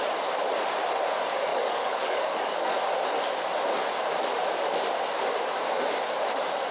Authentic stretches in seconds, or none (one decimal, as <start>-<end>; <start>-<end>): 0.0-1.5; 2.7-6.7